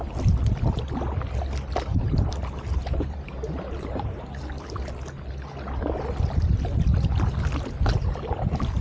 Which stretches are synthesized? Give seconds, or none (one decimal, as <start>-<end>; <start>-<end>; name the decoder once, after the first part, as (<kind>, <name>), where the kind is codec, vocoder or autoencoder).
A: 1.9-4.4 (vocoder, BigVGAN v2)